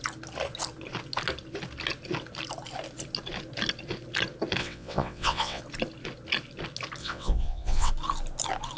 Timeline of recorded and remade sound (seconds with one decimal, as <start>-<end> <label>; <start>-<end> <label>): 0.0-4.6 recorded; 4.6-5.6 remade; 5.6-7.0 recorded; 7.0-7.9 remade; 7.9-8.8 recorded